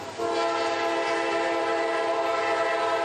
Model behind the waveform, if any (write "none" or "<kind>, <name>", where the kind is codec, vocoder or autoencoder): none